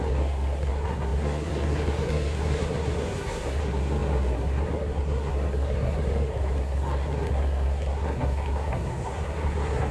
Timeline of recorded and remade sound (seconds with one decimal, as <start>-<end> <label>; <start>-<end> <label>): 0.0-9.9 remade

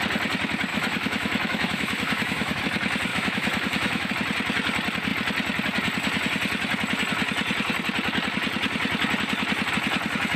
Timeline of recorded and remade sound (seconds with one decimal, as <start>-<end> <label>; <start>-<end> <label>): 0.0-0.7 recorded; 0.7-2.6 remade; 2.6-3.1 recorded; 3.1-4.1 remade; 4.1-10.4 recorded

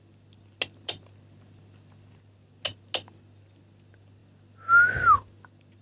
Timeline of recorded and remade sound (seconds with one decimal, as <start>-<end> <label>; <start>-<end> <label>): 0.0-5.8 recorded

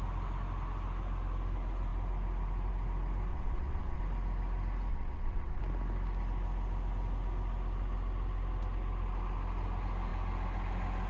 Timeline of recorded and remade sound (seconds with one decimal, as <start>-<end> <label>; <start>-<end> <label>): 0.0-3.3 recorded; 3.3-4.0 remade; 4.0-4.9 recorded; 4.9-5.6 remade; 5.6-11.1 recorded

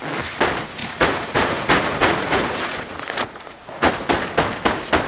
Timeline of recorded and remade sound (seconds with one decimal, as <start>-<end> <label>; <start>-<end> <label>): 0.0-0.8 recorded; 0.8-3.9 remade; 3.9-5.1 recorded

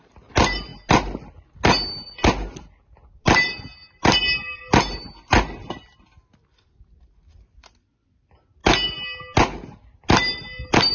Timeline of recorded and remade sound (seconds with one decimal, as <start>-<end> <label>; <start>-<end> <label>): 0.0-10.9 recorded

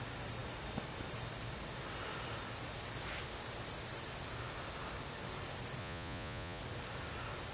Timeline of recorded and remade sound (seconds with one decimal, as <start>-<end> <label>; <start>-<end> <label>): 0.0-5.8 recorded; 5.8-6.6 remade; 6.6-7.5 recorded